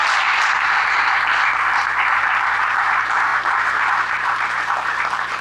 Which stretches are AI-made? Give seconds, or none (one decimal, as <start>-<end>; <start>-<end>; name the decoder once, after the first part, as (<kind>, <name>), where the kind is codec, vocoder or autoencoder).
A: 2.2-5.4 (vocoder, BigVGAN v2)